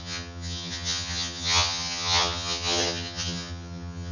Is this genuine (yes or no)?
no